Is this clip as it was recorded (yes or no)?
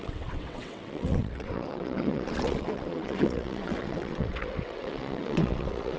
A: no